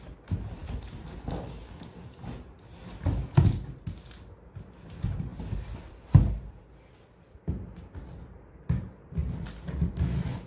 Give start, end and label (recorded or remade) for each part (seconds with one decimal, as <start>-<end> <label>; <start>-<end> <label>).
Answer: 0.0-10.5 recorded